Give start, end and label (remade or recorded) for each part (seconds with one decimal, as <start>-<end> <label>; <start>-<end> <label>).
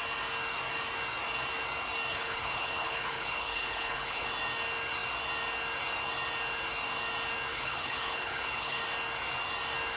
0.0-2.1 recorded; 2.1-4.3 remade; 4.3-7.5 recorded; 7.5-8.8 remade; 8.8-10.0 recorded